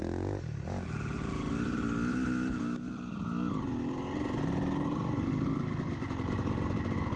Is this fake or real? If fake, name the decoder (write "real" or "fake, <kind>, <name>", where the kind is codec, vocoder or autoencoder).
real